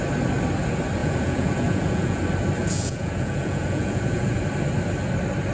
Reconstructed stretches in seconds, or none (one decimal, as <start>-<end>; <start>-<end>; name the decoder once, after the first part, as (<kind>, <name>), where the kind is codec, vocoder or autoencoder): 1.0-2.2 (vocoder, Vocos); 2.6-4.4